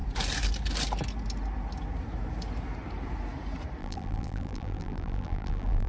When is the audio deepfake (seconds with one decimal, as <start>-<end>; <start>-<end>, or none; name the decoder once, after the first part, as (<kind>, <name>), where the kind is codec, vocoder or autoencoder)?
3.8-5.9 (vocoder, BigVGAN v2)